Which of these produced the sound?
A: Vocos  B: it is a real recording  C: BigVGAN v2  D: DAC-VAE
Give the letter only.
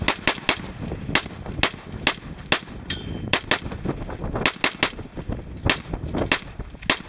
B